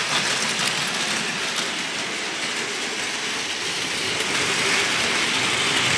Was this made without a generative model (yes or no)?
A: yes